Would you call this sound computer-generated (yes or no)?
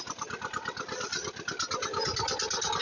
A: no